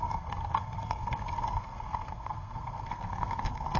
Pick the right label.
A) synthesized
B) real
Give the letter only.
A